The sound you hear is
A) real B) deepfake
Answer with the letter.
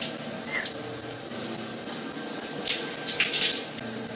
A